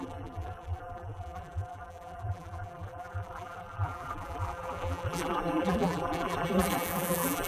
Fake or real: fake